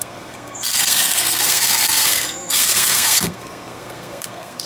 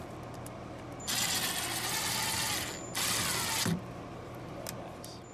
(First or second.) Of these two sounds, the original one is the second